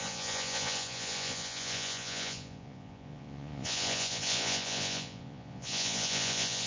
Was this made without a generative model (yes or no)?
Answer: no